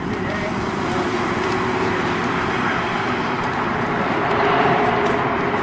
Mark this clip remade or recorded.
remade